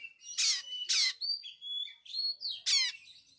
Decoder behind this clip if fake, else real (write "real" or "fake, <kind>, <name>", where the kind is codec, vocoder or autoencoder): real